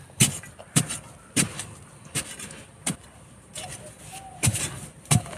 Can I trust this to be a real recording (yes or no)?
no